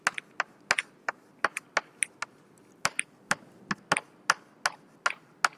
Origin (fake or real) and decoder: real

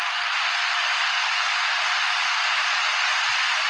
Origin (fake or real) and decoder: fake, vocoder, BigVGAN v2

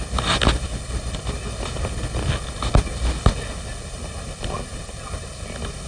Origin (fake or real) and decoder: real